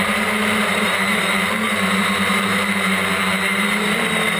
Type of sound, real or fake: fake